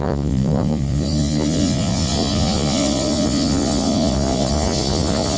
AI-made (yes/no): yes